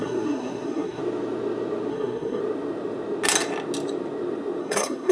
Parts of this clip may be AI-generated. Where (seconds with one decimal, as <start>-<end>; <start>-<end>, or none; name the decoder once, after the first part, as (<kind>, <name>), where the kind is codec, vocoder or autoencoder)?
0.0-1.0 (codec, SNAC); 1.9-2.4; 4.6-5.1